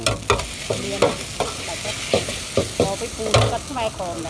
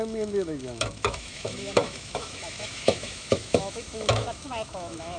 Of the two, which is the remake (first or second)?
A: second